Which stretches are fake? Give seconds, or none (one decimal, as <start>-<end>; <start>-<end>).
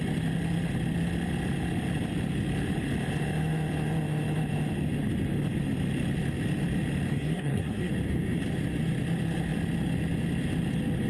7.1-7.9